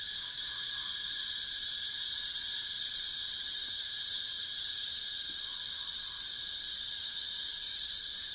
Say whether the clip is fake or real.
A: fake